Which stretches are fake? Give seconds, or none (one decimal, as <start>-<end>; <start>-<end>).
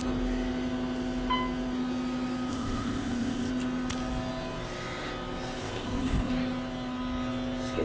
2.5-3.5; 5.6-6.3